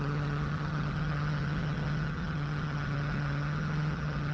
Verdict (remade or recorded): remade